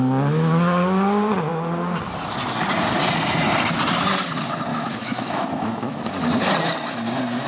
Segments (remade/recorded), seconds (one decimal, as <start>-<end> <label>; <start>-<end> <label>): 0.0-4.7 recorded; 4.7-6.1 remade; 6.1-7.5 recorded